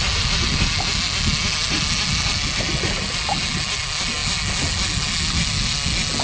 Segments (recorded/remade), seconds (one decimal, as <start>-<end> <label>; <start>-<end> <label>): 0.0-6.2 recorded